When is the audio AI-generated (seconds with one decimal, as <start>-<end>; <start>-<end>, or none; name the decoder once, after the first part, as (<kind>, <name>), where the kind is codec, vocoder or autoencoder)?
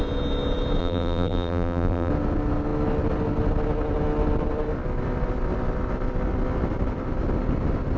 0.8-2.1 (vocoder, BigVGAN v2)